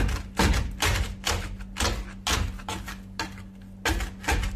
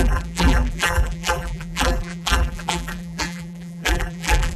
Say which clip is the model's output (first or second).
second